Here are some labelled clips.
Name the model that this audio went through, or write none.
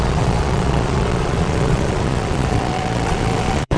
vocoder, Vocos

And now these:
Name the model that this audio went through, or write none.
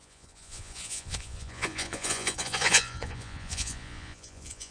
vocoder, Vocos